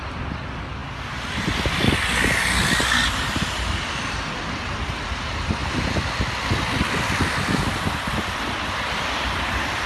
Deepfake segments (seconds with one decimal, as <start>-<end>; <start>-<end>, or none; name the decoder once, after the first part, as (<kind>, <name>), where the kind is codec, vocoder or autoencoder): none